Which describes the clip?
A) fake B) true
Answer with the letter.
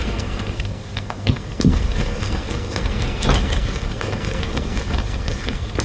A